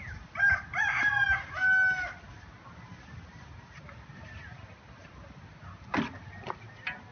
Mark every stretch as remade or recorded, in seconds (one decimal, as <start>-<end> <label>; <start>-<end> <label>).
0.0-7.1 recorded

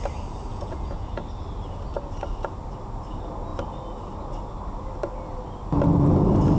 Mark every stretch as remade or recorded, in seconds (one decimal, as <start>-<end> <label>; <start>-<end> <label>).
0.0-0.5 recorded; 0.5-1.2 remade; 1.2-6.6 recorded

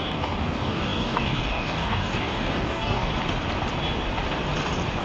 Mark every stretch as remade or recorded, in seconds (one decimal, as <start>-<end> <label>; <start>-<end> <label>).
0.0-3.1 remade; 3.1-5.0 recorded

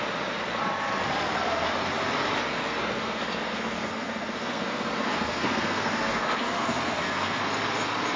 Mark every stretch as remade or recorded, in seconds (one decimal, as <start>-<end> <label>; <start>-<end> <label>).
0.0-2.5 recorded; 2.5-7.4 remade; 7.4-8.2 recorded

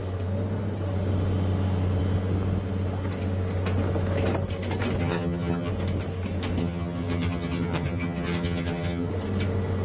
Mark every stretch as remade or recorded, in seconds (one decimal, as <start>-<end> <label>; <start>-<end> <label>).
0.0-5.0 recorded; 5.0-5.7 remade; 5.7-6.6 recorded; 6.6-9.1 remade; 9.1-9.8 recorded

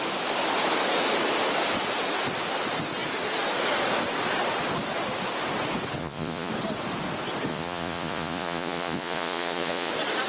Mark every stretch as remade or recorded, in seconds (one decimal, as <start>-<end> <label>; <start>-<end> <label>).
0.0-6.0 recorded; 6.0-6.5 remade; 6.5-7.5 recorded; 7.5-9.9 remade; 9.9-10.3 recorded

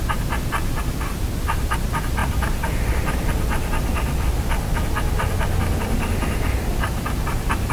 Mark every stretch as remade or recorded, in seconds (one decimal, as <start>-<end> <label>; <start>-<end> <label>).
0.0-2.2 recorded; 2.2-2.9 remade; 2.9-7.7 recorded